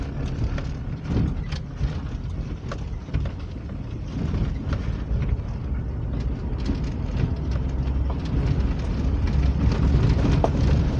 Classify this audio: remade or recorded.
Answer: recorded